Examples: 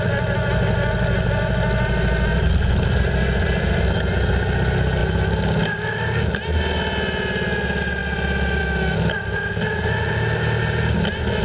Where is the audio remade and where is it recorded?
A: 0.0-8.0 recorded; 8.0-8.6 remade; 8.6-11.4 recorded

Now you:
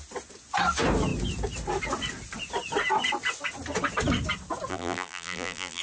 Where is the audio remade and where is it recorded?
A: 0.0-4.7 recorded; 4.7-5.8 remade

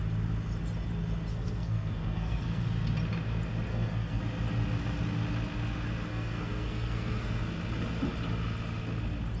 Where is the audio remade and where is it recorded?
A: 0.0-1.3 recorded; 1.3-2.6 remade; 2.6-3.7 recorded; 3.7-4.2 remade; 4.2-6.1 recorded; 6.1-7.4 remade; 7.4-9.4 recorded

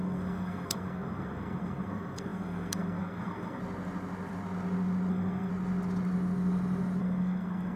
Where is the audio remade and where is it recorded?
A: 0.0-3.6 remade; 3.6-5.1 recorded; 5.1-5.5 remade; 5.5-7.0 recorded; 7.0-7.8 remade

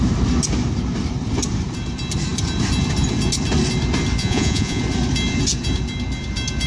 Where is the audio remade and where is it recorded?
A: 0.0-4.2 recorded; 4.2-4.8 remade; 4.8-6.7 recorded

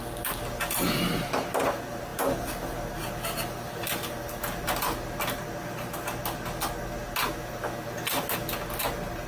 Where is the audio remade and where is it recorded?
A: 0.0-9.3 recorded

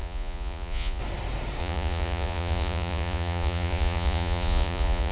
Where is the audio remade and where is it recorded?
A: 0.0-1.0 remade; 1.0-1.6 recorded; 1.6-5.1 remade

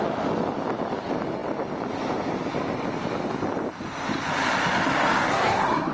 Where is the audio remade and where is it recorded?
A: 0.0-5.3 recorded; 5.3-5.9 remade